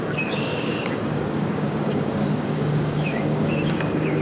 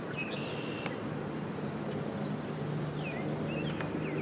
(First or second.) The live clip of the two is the second